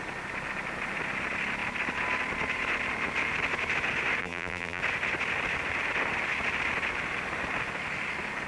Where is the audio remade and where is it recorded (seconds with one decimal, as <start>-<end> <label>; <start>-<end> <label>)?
0.0-4.2 recorded; 4.2-4.8 remade; 4.8-8.5 recorded